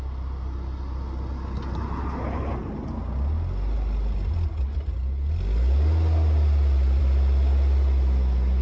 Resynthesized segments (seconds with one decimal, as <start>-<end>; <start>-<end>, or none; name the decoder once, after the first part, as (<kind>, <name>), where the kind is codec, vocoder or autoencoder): none